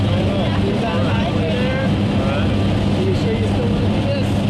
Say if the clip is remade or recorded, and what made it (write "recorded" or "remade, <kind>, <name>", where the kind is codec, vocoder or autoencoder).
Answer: recorded